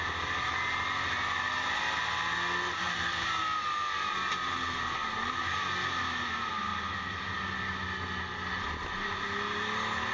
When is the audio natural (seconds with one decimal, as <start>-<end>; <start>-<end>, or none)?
0.0-10.1